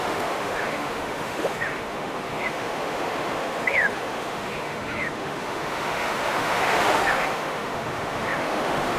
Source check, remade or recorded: remade